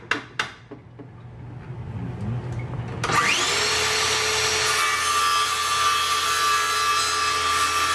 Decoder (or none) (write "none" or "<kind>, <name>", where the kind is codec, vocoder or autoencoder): none